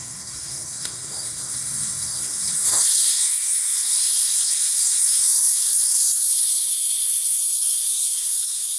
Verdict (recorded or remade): remade